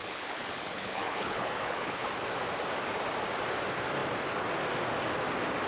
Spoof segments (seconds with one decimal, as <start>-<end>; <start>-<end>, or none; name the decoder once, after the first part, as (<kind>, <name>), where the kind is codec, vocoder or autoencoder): 0.0-2.1 (codec, HILCodec)